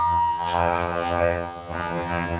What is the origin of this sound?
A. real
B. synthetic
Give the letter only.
B